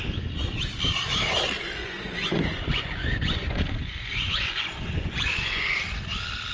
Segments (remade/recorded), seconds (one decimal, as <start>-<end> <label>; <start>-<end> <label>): 0.0-1.8 recorded; 1.8-5.7 remade; 5.7-6.5 recorded